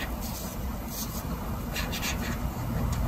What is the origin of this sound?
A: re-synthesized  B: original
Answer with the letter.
B